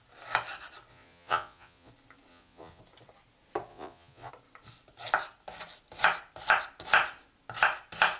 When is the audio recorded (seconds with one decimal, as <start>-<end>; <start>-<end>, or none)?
0.0-0.9; 1.9-2.3; 2.8-3.7; 4.3-8.2